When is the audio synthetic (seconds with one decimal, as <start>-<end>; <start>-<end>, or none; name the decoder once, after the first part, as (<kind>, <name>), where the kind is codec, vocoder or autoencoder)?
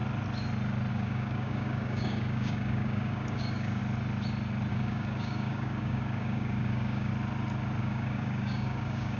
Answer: 0.9-3.8 (codec, DAC); 4.7-7.1; 7.8-9.2